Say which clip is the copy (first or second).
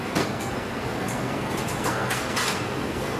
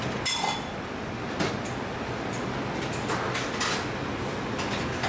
first